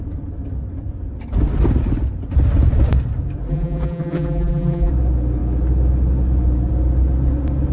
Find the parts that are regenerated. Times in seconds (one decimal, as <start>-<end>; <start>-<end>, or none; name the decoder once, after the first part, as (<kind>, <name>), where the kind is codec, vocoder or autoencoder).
3.5-4.9 (vocoder, BigVGAN v2)